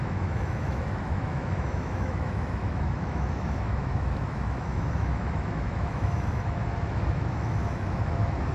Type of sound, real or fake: fake